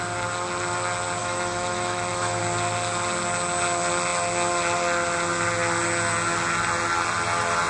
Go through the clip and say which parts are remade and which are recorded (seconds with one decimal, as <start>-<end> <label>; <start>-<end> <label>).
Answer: 0.0-1.2 recorded; 1.2-2.4 remade; 2.4-7.7 recorded